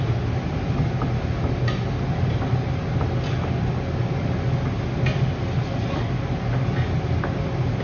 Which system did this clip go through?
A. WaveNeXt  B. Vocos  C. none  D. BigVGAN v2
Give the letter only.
C